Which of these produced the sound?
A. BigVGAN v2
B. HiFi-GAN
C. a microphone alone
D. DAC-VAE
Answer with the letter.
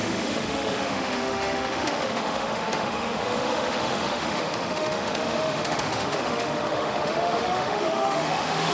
D